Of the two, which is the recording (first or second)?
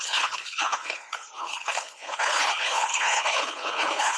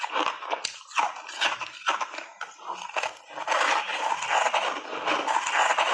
second